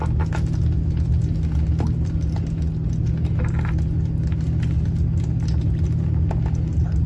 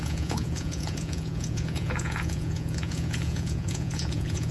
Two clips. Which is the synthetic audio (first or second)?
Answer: second